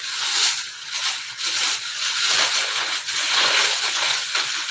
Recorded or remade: remade